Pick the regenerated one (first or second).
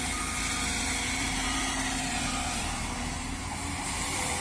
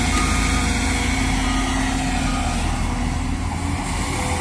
first